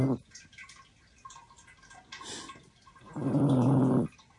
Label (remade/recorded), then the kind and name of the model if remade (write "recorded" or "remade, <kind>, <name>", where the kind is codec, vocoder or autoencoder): recorded